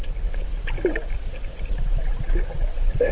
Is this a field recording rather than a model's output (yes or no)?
yes